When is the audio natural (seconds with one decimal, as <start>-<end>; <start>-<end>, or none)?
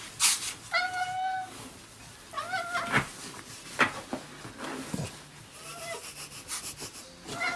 0.0-7.6